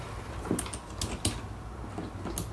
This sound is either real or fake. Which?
real